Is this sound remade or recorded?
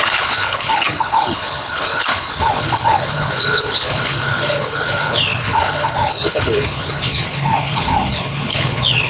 remade